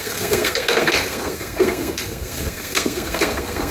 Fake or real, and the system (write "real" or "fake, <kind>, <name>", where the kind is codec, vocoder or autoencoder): fake, codec, SNAC